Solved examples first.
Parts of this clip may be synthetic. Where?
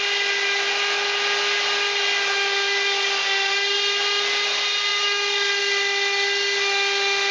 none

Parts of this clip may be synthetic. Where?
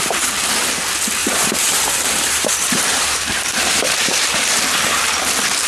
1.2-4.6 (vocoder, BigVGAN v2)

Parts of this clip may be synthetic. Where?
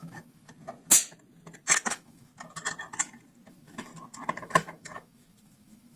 0.0-0.5 (autoencoder, DAC-VAE); 1.9-2.3; 3.5-3.9; 4.4-6.0